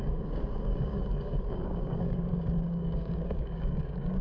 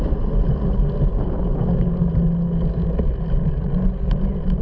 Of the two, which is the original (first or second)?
second